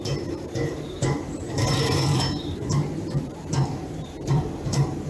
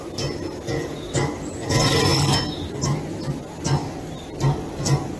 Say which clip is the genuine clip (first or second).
second